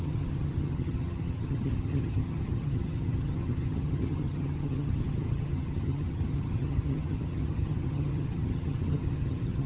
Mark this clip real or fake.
fake